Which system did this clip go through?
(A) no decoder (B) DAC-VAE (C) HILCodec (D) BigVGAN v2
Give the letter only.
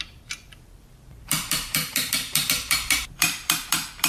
D